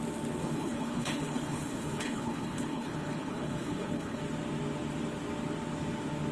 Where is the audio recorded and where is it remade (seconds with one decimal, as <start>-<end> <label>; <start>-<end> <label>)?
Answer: 0.0-0.4 recorded; 0.4-4.2 remade; 4.2-6.3 recorded